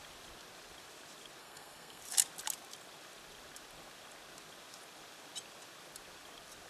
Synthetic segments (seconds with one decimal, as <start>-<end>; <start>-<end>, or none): 1.4-2.0